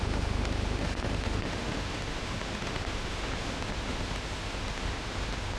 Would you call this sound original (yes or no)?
no